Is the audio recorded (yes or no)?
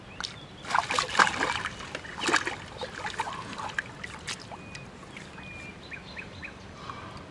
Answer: yes